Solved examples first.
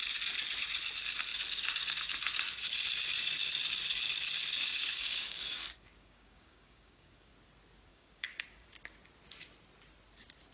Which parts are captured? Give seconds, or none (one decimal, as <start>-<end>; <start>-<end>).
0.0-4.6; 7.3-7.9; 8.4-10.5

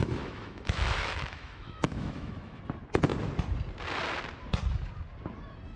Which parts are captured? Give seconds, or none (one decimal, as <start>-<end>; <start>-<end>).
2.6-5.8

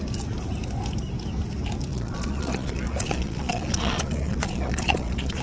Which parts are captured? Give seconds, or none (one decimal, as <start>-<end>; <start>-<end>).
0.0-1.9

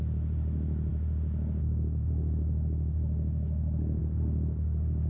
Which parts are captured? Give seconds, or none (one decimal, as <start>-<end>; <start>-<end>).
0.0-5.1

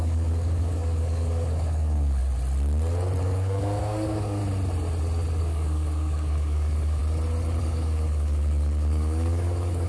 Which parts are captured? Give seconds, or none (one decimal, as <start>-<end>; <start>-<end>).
2.2-3.2; 4.4-5.4; 7.0-7.6